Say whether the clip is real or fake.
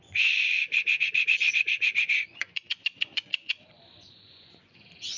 fake